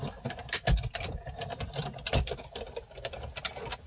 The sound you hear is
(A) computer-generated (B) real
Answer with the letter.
B